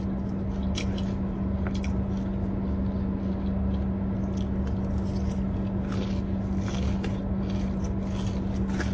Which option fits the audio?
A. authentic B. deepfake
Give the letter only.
A